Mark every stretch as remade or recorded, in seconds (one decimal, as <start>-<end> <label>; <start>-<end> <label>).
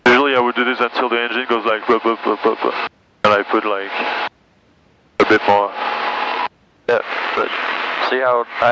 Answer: 0.0-6.3 recorded; 6.3-8.0 remade; 8.0-8.7 recorded